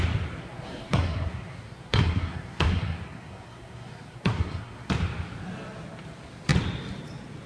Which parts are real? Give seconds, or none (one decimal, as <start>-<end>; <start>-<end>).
0.0-0.4; 4.9-7.5